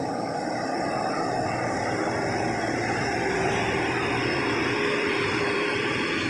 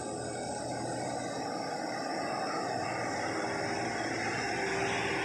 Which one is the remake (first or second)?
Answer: first